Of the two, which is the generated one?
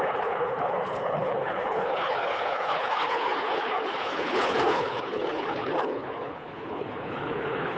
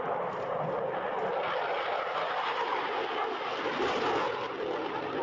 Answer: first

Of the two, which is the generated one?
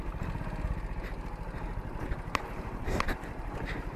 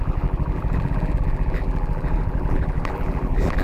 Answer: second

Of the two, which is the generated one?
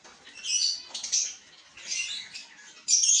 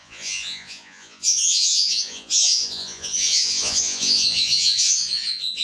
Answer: second